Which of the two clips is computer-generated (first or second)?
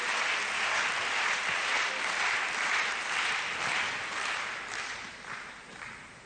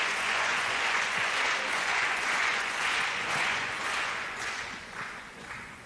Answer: second